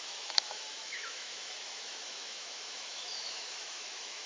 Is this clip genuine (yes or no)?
no